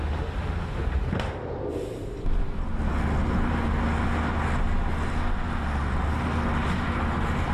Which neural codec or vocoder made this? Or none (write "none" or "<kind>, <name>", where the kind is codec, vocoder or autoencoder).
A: none